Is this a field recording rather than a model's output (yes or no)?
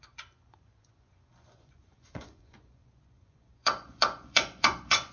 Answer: no